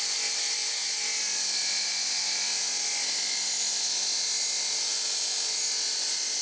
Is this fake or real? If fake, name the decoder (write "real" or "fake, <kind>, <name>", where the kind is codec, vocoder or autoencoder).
real